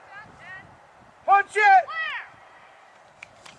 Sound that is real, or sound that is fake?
fake